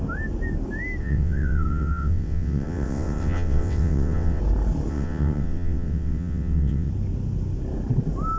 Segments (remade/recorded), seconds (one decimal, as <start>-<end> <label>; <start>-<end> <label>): 0.0-1.0 recorded; 1.0-4.4 remade; 4.4-4.9 recorded; 4.9-6.9 remade; 6.9-8.4 recorded